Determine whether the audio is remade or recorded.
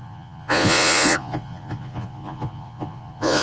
remade